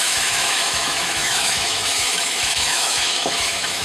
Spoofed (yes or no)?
yes